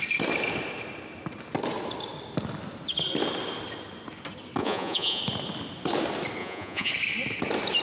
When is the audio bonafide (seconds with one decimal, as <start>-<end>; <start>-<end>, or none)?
0.0-4.6; 5.2-6.4; 6.9-7.8